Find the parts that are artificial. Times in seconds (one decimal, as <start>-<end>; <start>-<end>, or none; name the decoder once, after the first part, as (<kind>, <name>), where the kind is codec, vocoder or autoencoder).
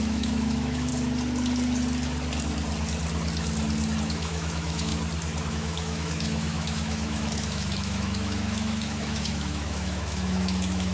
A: 0.0-0.9 (autoencoder, DAC-VAE); 4.0-4.9; 5.5-10.9